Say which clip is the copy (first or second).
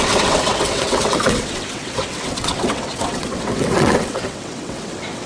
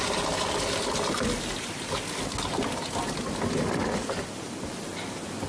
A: first